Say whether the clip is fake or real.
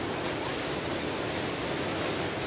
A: real